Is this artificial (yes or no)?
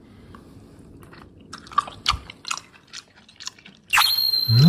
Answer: no